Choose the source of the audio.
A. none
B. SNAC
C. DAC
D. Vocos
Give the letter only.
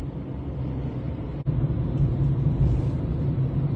A